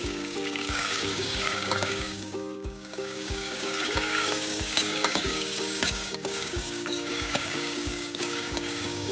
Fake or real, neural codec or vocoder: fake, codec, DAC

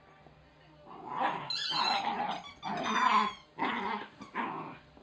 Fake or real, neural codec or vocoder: real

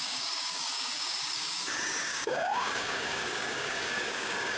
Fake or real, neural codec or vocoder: fake, codec, DAC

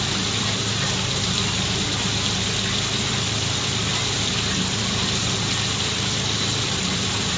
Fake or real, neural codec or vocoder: real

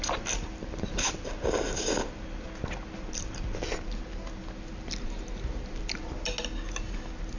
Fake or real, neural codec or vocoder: real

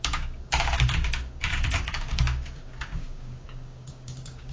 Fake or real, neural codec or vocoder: fake, codec, DAC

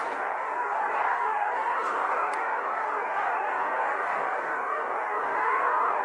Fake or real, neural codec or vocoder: fake, codec, DAC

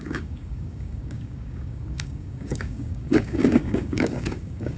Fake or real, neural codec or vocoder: fake, codec, DAC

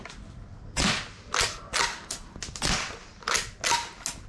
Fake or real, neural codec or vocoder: real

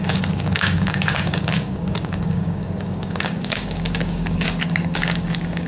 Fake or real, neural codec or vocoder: fake, codec, DAC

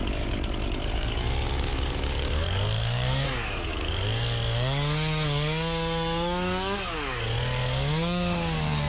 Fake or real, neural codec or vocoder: fake, codec, DAC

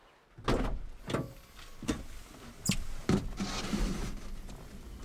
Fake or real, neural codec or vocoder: real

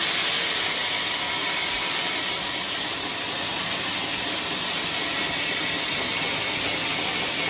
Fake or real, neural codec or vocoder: real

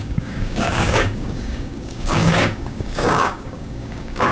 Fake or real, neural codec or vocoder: fake, codec, DAC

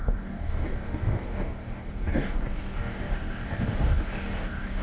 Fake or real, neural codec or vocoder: fake, codec, DAC